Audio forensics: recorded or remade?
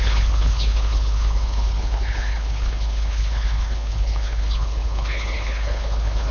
remade